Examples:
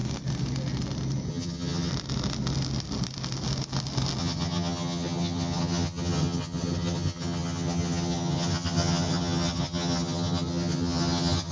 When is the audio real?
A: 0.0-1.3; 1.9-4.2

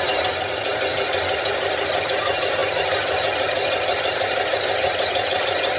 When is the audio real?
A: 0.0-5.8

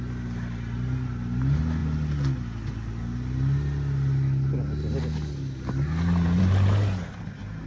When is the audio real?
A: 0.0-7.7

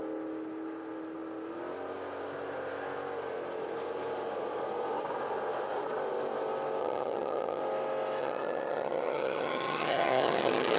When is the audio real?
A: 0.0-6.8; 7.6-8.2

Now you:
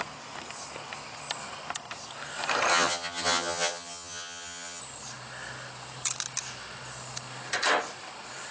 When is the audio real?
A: 0.0-2.7; 4.8-8.5